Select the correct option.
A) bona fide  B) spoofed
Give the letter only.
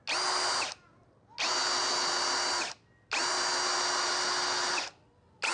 A